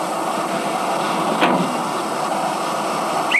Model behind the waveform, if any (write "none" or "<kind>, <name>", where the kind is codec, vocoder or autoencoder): none